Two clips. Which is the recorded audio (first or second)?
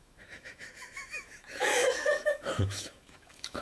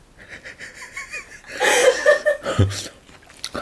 second